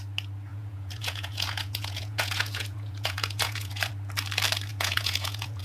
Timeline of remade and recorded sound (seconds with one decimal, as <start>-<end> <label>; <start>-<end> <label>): 0.0-0.5 recorded; 0.5-3.9 remade; 3.9-4.7 recorded; 4.7-5.6 remade